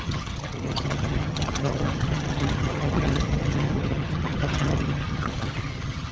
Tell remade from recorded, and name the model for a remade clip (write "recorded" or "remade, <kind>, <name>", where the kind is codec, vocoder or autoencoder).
remade, vocoder, HiFi-GAN